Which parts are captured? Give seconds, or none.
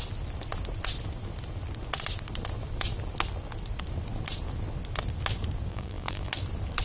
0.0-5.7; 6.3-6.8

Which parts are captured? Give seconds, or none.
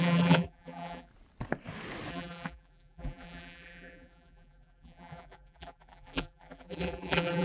1.1-2.1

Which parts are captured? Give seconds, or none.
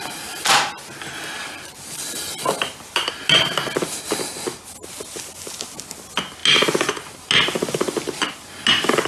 0.0-1.4; 2.9-9.1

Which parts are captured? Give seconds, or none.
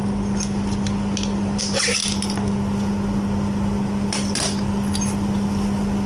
0.0-6.1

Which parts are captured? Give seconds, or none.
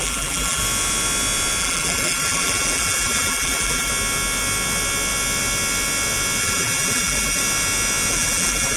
0.6-1.6; 3.9-6.4; 7.4-8.1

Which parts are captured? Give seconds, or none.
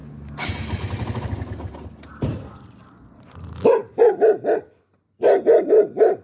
0.0-2.1; 3.2-3.8; 5.6-6.2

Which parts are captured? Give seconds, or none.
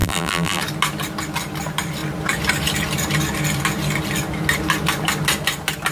0.6-5.9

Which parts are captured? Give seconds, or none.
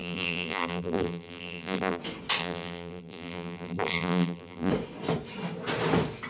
2.0-2.4; 4.7-6.3